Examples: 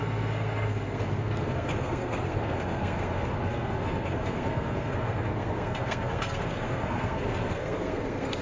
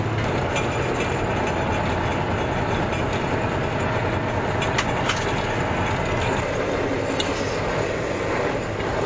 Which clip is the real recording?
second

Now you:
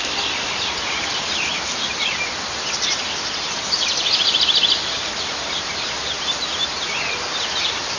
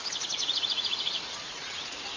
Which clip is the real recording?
first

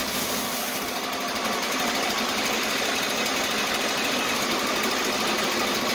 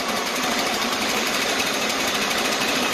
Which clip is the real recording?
first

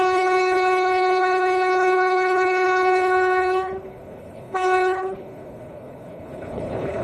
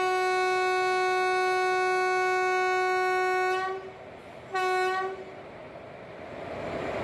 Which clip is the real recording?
second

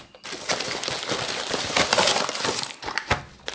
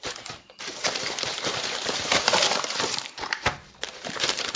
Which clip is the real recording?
first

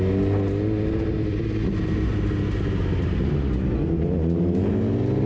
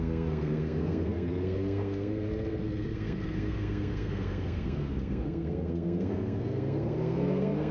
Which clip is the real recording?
first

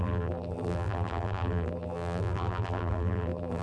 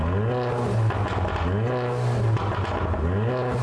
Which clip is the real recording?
second